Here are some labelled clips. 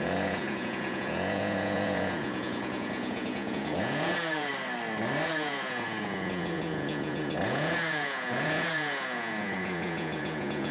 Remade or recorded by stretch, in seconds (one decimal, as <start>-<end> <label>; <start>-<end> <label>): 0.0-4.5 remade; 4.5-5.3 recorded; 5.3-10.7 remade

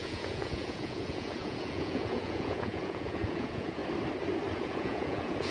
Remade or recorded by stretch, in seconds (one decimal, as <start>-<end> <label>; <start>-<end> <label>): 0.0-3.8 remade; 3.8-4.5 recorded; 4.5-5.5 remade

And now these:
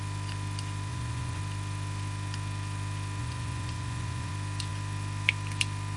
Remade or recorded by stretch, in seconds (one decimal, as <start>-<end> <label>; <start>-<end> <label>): 0.0-0.9 recorded; 0.9-1.4 remade; 1.4-3.2 recorded; 3.2-4.3 remade; 4.3-6.0 recorded